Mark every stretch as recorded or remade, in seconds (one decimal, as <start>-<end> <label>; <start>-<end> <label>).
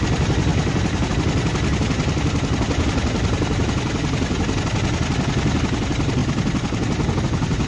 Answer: 0.0-7.7 recorded